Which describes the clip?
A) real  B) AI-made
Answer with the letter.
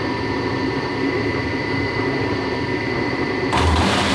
B